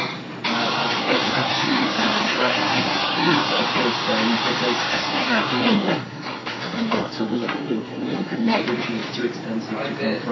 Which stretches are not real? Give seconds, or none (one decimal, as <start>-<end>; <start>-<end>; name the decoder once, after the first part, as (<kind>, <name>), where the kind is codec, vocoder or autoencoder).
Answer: 1.0-3.6 (codec, SNAC); 4.9-8.6